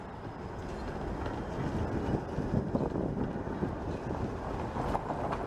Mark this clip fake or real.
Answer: real